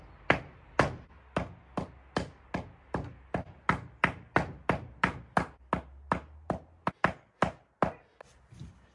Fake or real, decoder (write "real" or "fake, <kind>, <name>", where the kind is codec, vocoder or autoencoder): real